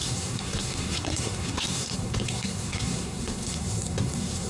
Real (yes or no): no